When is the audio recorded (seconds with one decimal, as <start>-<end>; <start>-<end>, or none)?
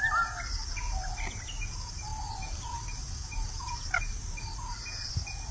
0.0-5.5